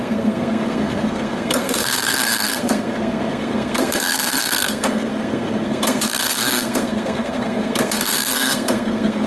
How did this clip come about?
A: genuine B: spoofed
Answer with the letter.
B